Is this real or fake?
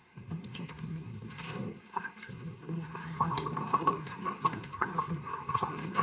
fake